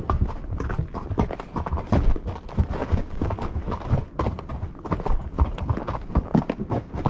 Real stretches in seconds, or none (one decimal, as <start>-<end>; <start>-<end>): 0.0-2.8; 3.6-5.8